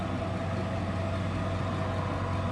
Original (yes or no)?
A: yes